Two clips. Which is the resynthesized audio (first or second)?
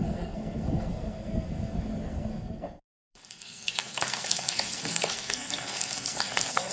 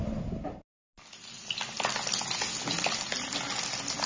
first